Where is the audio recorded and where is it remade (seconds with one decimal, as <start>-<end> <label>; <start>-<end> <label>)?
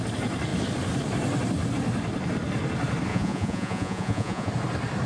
0.0-3.1 recorded; 3.1-4.5 remade; 4.5-5.1 recorded